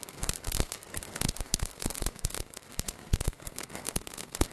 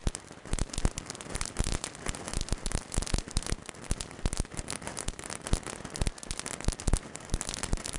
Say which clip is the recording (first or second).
second